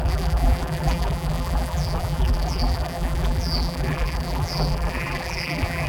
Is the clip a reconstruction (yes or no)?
yes